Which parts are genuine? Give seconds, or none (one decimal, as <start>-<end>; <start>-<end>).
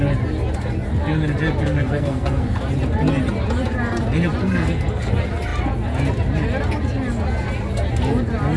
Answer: 0.0-1.6; 2.6-4.4; 5.1-8.6